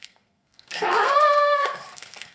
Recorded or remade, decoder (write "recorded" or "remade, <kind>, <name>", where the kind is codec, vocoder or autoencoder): remade, codec, SNAC